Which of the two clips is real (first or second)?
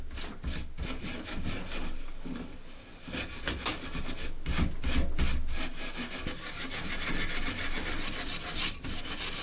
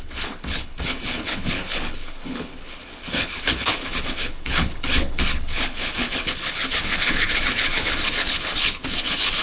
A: first